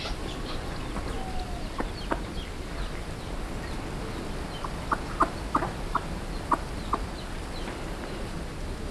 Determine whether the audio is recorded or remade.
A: recorded